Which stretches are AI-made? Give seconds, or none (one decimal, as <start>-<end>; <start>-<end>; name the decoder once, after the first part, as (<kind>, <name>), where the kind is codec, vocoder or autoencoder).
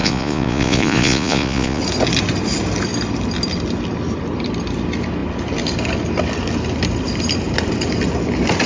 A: 0.0-1.8 (vocoder, Vocos)